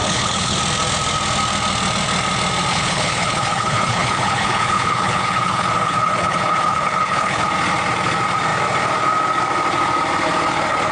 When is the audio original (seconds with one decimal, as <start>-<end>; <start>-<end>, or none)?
0.6-2.7; 7.5-10.9